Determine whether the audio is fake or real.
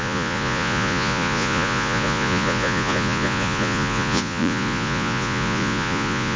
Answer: fake